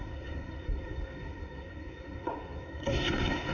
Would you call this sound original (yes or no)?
no